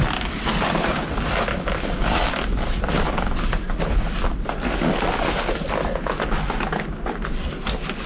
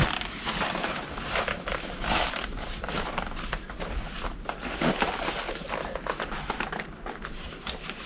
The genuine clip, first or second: first